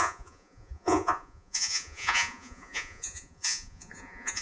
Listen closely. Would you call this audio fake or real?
fake